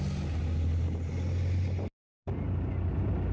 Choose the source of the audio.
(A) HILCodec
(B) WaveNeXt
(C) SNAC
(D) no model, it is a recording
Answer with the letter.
D